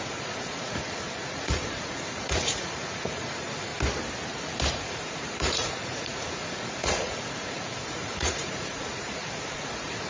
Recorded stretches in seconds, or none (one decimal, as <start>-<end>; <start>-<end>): 3.7-4.7